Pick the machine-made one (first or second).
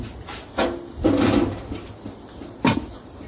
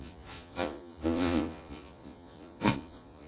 second